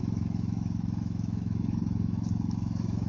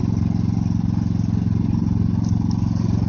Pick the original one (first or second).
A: second